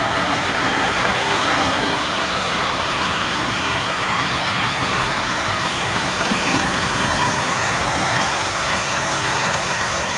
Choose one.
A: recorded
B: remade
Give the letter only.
B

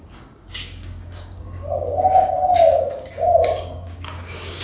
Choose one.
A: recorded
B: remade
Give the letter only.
B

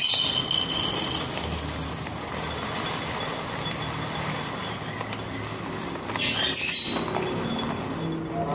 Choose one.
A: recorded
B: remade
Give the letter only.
A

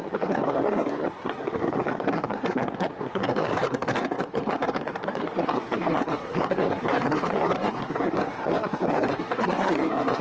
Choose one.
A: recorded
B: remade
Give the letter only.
B